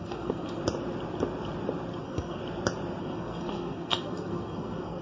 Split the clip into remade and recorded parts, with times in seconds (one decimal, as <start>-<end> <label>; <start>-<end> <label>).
0.0-0.6 remade; 0.6-2.0 recorded; 2.0-2.4 remade; 2.4-3.0 recorded; 3.0-5.0 remade